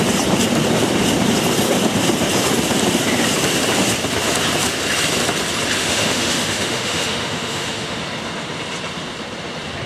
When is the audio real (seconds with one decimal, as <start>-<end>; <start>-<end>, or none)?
0.0-5.8; 8.0-9.9